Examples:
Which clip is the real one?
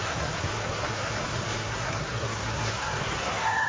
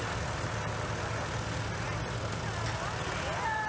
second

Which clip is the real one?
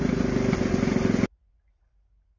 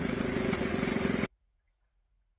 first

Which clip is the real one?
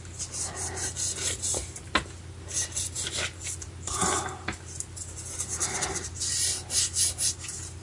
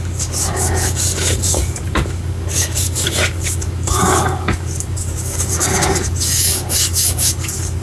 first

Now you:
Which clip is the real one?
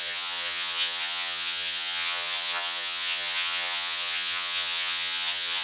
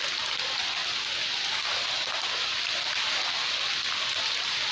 second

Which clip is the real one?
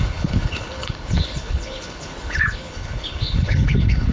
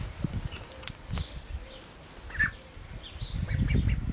second